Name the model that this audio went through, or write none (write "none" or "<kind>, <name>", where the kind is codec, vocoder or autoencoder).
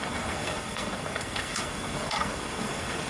codec, SNAC